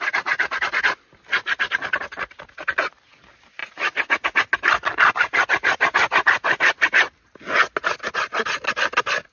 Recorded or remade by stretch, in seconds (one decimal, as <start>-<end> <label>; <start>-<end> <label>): 0.0-9.3 recorded